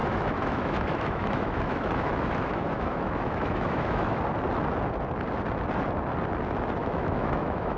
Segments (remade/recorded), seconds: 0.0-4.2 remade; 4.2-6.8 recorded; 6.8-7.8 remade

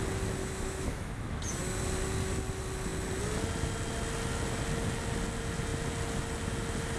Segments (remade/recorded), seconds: 0.0-0.4 recorded; 0.4-1.4 remade; 1.4-7.0 recorded

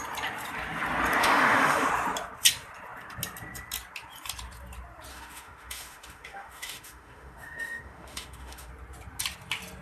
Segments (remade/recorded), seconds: 0.0-1.2 recorded; 1.2-1.9 remade; 1.9-5.1 recorded; 5.1-8.7 remade; 8.7-9.8 recorded

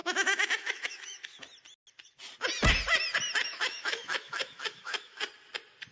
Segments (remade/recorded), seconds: 0.0-1.4 remade; 1.4-3.5 recorded; 3.5-5.2 remade; 5.2-5.9 recorded